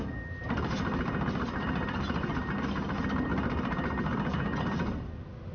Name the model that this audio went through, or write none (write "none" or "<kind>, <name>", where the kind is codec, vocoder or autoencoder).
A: none